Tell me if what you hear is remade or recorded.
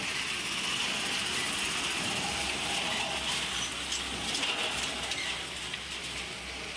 recorded